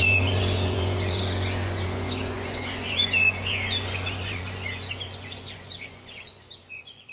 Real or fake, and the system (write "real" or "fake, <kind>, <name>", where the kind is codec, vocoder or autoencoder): fake, vocoder, Vocos